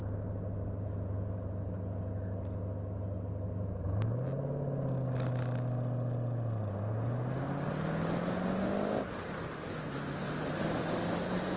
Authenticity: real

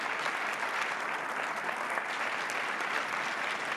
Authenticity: real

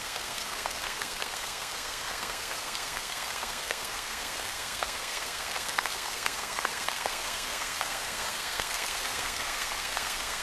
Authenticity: fake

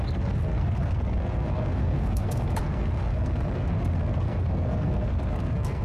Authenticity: fake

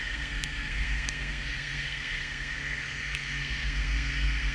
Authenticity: fake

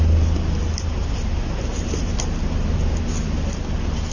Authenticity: real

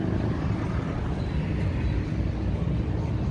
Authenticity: real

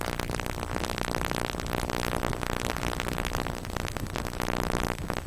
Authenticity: real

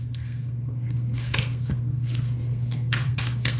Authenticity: fake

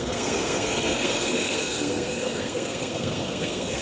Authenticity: fake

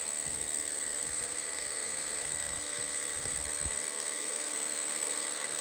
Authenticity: fake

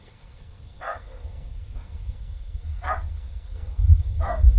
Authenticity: fake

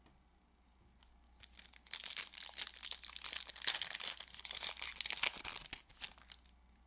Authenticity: real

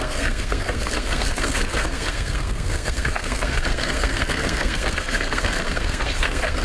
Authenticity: fake